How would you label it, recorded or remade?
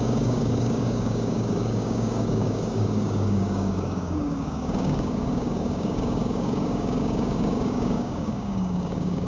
remade